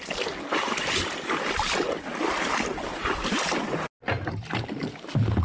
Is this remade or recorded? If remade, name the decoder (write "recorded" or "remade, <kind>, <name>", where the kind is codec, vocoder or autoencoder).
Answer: recorded